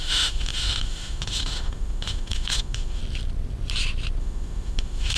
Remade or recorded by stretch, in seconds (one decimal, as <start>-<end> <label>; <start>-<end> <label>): 0.0-3.0 remade; 3.0-4.2 recorded; 4.2-5.2 remade